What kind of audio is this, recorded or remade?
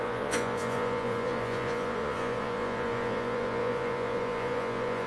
remade